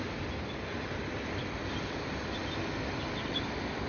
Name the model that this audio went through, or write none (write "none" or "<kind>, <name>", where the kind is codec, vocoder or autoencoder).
none